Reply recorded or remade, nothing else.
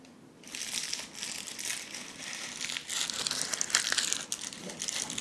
recorded